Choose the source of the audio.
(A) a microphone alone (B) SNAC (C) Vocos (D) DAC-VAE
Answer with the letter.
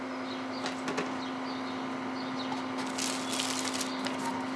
A